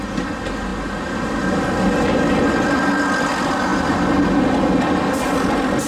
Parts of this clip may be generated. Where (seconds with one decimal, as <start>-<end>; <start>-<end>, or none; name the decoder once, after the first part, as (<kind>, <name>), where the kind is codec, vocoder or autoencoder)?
none